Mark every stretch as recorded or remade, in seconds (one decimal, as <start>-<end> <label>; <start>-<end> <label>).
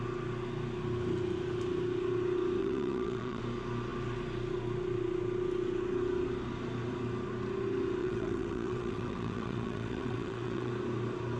0.0-2.6 recorded; 2.6-3.4 remade; 3.4-8.0 recorded; 8.0-10.7 remade; 10.7-11.4 recorded